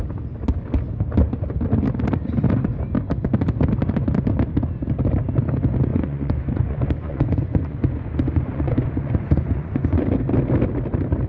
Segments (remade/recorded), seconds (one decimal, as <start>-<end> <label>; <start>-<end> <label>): 0.0-5.9 recorded; 5.9-10.0 remade; 10.0-11.3 recorded